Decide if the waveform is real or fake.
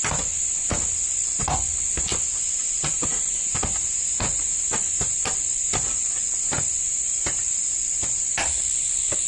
real